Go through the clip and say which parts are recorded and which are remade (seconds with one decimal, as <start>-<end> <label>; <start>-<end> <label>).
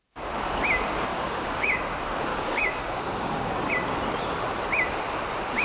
0.0-1.1 recorded; 1.1-1.9 remade; 1.9-2.3 recorded; 2.3-3.7 remade; 3.7-5.6 recorded